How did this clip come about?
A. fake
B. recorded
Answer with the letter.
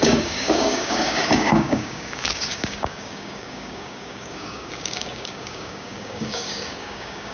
A